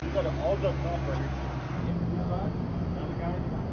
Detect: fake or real real